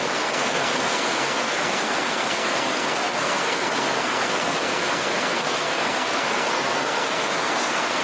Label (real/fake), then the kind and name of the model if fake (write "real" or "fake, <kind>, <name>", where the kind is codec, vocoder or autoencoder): fake, codec, SNAC